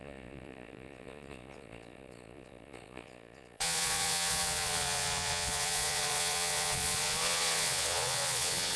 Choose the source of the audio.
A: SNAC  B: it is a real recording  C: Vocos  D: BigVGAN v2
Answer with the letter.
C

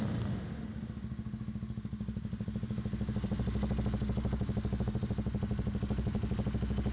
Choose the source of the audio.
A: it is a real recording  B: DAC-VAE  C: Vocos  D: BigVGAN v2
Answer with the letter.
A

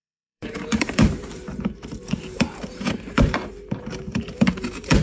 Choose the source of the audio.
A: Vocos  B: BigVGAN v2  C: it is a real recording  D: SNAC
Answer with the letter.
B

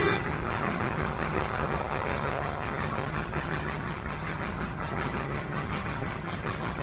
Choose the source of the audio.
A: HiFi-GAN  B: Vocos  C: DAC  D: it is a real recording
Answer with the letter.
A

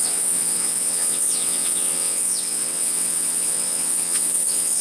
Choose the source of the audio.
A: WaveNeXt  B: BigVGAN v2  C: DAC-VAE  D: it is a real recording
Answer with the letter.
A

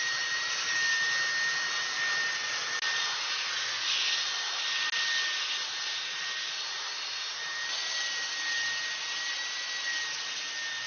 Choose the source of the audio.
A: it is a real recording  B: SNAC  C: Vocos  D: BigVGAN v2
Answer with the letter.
A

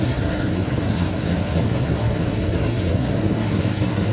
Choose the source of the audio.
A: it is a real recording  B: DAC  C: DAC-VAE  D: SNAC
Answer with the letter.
D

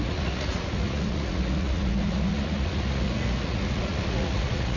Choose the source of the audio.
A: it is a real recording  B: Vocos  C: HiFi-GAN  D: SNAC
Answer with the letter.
B